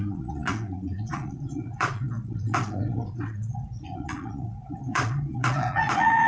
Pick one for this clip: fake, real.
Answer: fake